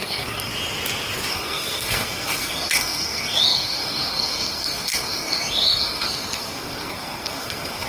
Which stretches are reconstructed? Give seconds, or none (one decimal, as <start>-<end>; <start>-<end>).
0.0-0.5; 1.3-7.9